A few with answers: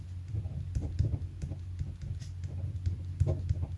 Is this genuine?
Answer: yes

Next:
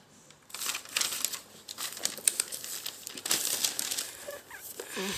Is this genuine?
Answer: yes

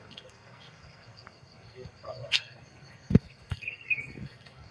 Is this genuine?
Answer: no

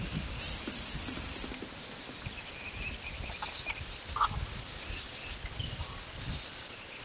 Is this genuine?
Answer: yes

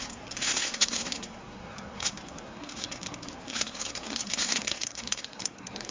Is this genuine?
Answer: no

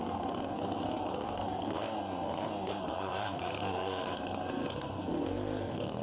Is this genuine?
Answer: no